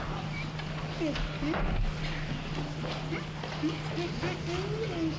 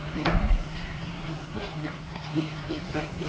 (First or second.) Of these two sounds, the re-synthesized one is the second